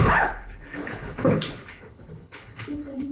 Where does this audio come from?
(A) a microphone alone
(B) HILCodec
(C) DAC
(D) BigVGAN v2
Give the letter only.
B